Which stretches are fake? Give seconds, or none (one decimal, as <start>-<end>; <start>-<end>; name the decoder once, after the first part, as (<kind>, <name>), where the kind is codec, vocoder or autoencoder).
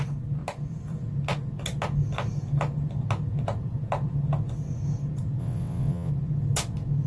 5.4-6.1 (vocoder, WaveNeXt)